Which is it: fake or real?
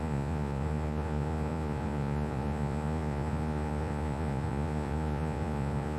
fake